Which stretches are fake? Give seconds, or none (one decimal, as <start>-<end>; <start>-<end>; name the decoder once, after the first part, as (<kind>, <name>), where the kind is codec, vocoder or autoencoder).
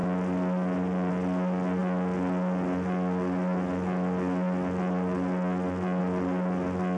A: none